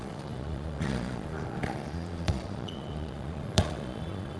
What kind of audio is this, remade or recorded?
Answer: remade